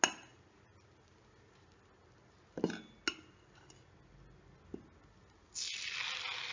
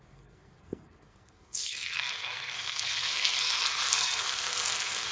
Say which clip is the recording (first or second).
first